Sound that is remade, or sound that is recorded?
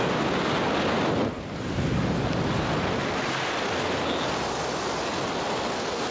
recorded